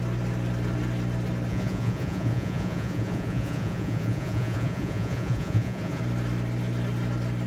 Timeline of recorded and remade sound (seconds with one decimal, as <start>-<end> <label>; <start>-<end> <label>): 0.0-1.5 recorded; 1.5-6.0 remade; 6.0-7.5 recorded